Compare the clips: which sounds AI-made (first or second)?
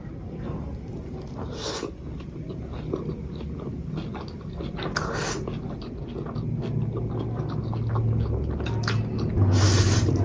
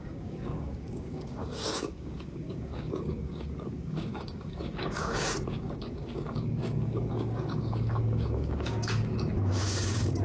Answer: second